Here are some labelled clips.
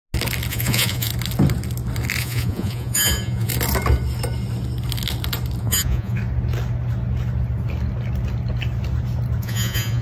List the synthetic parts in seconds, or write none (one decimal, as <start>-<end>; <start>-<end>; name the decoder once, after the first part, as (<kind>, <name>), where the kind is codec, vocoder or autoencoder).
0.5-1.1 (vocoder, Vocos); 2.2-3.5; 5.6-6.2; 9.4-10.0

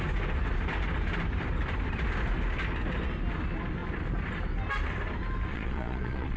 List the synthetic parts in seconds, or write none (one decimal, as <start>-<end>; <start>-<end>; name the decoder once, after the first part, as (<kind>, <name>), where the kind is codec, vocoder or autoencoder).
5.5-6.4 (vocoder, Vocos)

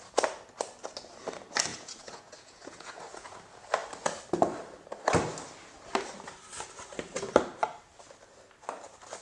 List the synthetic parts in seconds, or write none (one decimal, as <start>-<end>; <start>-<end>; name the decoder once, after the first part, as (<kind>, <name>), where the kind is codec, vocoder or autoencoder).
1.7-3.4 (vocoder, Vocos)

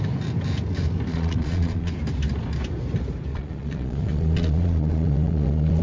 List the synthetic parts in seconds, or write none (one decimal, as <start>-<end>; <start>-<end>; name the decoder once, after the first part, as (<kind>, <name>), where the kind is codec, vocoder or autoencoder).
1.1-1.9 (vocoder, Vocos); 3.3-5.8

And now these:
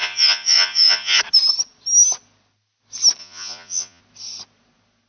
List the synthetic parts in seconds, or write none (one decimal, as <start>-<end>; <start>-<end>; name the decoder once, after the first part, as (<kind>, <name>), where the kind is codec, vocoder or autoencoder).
0.0-1.2 (vocoder, Vocos); 3.2-4.0